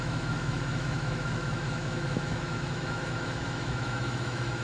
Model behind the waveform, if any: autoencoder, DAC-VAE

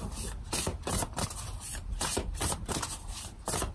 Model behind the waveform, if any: none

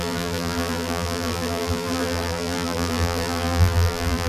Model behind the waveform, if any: vocoder, BigVGAN v2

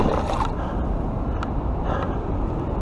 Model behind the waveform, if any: none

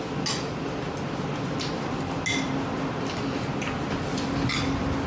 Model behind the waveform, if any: none